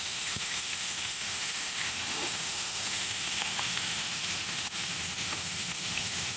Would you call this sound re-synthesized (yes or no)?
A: yes